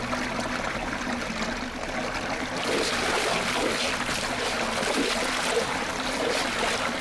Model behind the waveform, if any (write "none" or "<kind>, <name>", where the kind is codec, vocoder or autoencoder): none